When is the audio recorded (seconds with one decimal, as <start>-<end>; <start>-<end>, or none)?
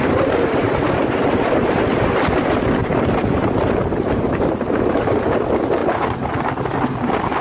0.0-2.8; 5.1-7.4